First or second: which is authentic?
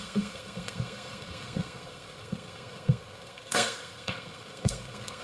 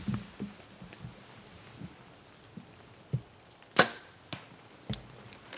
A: second